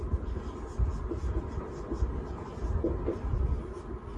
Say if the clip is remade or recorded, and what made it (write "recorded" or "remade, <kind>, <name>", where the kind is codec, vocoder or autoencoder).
recorded